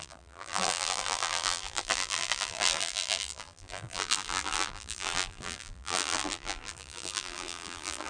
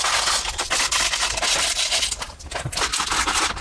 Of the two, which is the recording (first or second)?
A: second